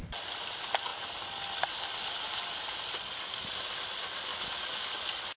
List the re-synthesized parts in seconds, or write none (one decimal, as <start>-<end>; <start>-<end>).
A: 4.3-4.9